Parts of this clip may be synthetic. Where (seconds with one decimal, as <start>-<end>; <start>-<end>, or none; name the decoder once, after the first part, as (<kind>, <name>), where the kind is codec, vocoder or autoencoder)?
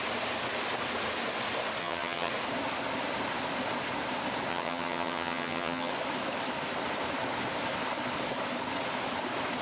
1.8-2.3 (vocoder, HiFi-GAN); 4.5-5.9